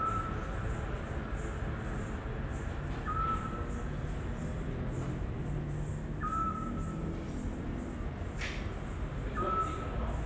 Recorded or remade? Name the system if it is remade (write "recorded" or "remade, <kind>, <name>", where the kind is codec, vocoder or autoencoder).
recorded